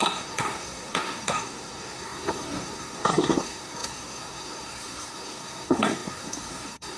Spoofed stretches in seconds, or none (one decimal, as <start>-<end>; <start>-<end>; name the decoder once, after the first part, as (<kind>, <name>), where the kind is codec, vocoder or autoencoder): 0.0-7.0 (codec, SNAC)